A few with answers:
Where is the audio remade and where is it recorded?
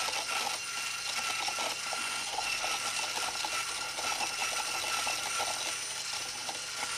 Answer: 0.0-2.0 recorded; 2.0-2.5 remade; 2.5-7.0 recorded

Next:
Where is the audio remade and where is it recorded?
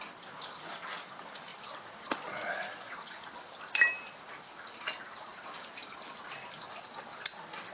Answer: 0.0-5.3 remade; 5.3-7.3 recorded; 7.3-7.7 remade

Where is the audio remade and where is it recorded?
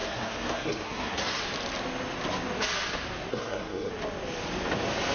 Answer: 0.0-1.4 remade; 1.4-3.3 recorded; 3.3-3.9 remade; 3.9-5.1 recorded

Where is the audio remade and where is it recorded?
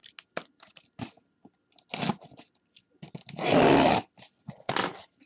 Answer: 0.0-5.3 recorded